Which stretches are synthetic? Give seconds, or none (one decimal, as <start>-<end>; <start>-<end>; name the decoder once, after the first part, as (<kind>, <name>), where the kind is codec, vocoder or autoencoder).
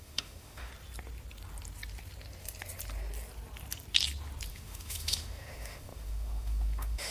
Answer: 0.0-0.7 (autoencoder, DAC-VAE); 4.5-7.1